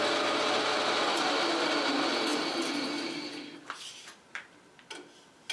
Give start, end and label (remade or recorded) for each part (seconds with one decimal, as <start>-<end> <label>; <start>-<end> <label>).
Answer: 0.0-5.5 recorded